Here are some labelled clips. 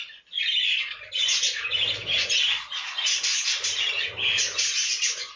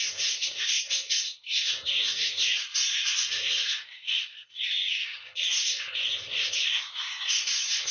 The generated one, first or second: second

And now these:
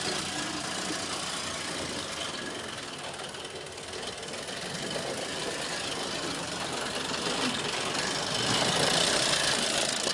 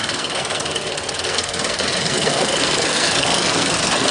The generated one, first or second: second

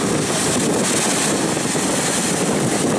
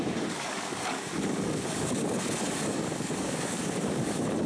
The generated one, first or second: second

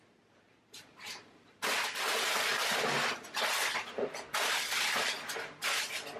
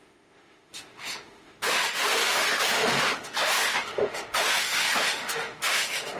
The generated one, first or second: second